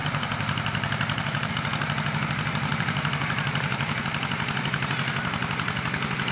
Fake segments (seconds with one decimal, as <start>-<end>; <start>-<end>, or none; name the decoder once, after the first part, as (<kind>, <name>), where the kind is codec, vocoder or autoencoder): 0.0-1.5 (vocoder, BigVGAN v2); 2.7-4.0